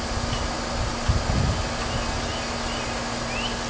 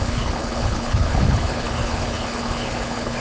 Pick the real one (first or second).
first